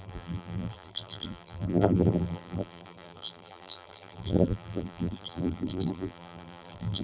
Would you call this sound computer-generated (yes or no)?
yes